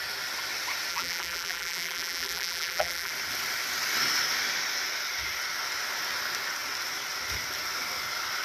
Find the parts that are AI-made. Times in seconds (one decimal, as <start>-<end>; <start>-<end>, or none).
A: 0.9-3.1